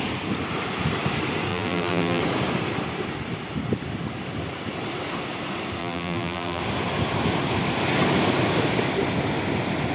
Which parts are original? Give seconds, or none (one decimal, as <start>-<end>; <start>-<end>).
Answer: 0.0-1.5; 2.2-5.8; 6.6-9.9